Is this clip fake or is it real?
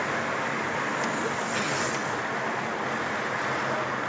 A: real